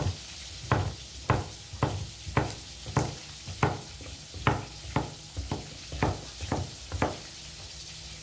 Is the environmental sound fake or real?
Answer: real